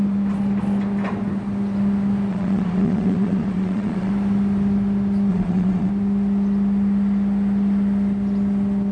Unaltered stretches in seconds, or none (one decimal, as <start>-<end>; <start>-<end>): 0.0-2.3; 4.1-5.3; 5.9-8.9